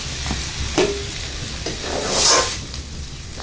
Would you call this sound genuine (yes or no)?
yes